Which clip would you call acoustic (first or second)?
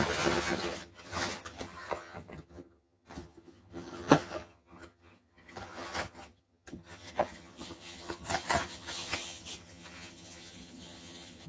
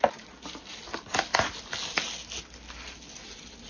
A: second